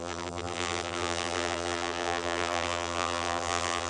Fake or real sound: fake